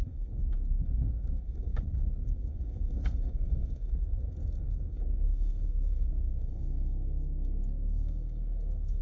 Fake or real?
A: fake